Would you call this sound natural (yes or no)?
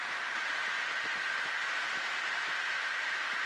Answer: yes